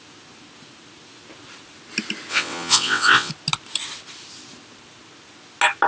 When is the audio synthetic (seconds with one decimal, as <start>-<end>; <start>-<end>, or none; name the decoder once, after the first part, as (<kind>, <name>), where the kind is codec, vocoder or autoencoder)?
2.3-3.3 (vocoder, WaveNeXt)